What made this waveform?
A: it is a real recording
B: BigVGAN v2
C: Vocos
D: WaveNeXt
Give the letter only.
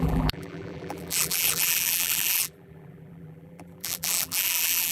B